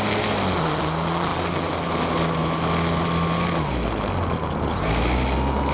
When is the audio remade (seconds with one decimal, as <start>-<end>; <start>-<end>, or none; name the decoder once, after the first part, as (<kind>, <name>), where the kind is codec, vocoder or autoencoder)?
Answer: none